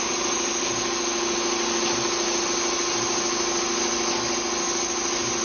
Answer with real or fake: real